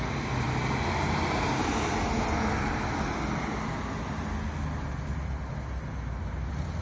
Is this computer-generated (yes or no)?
no